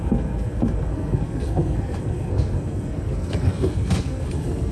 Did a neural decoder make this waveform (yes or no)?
yes